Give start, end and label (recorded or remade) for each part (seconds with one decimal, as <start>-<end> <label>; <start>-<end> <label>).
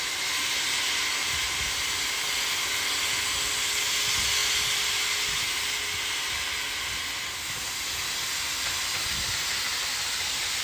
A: 0.0-10.6 recorded